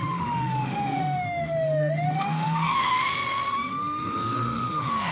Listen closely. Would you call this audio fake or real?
fake